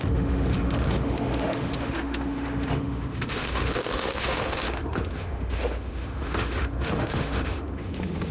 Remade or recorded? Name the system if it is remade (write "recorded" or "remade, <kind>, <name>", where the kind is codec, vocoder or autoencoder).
remade, autoencoder, DAC-VAE